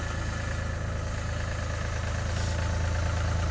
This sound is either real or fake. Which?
real